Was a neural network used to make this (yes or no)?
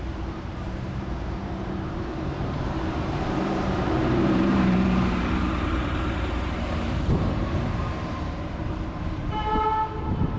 yes